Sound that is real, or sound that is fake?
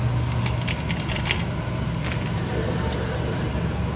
real